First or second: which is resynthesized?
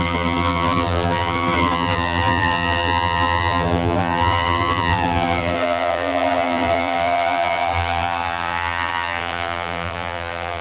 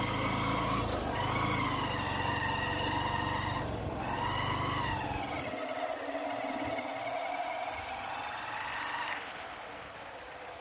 first